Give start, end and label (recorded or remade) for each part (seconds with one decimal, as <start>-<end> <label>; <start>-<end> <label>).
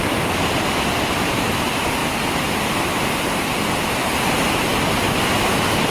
0.0-5.9 recorded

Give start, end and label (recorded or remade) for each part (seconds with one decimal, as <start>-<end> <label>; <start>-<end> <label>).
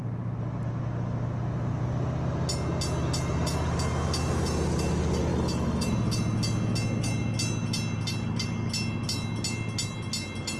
0.0-5.3 recorded; 5.3-5.9 remade; 5.9-10.6 recorded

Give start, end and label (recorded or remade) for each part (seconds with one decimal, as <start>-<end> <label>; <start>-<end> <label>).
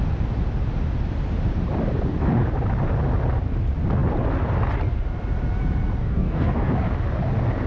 0.0-6.0 recorded; 6.0-6.7 remade; 6.7-7.7 recorded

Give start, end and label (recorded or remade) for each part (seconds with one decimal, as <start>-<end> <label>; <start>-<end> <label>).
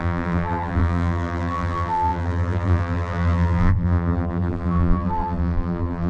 0.0-6.1 remade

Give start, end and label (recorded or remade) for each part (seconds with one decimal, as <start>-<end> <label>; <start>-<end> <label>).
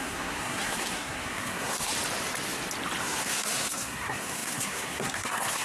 0.0-1.9 remade; 1.9-3.0 recorded; 3.0-5.6 remade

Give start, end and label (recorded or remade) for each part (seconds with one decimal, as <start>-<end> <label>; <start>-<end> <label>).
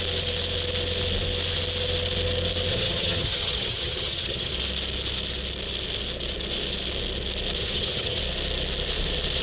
0.0-2.7 recorded; 2.7-4.5 remade; 4.5-7.6 recorded; 7.6-8.2 remade; 8.2-9.4 recorded